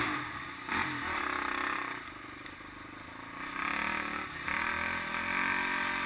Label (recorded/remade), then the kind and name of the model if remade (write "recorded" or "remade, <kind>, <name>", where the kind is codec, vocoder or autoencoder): recorded